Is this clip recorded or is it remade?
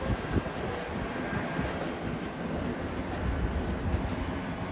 recorded